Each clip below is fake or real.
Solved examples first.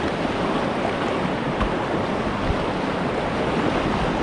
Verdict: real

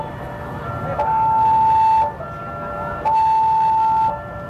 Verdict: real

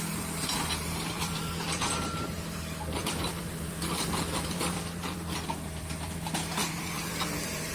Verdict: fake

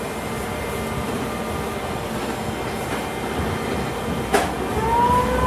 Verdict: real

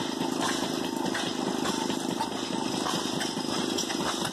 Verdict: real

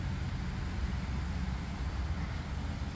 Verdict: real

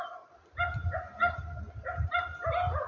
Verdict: real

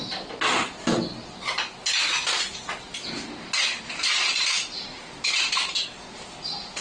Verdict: real